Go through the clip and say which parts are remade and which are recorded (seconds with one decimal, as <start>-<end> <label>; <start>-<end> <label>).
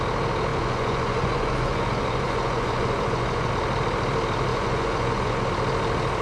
0.0-0.5 recorded; 0.5-3.5 remade; 3.5-4.5 recorded; 4.5-5.5 remade; 5.5-6.2 recorded